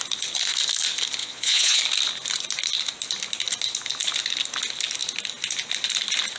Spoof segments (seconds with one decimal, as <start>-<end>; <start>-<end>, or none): 1.2-1.8